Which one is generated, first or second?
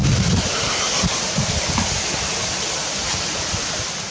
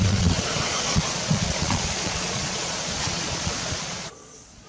second